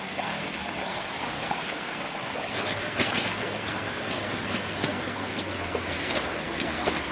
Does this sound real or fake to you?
fake